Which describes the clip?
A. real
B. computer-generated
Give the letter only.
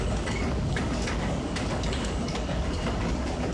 B